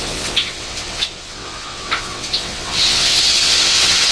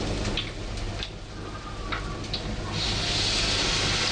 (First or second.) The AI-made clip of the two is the first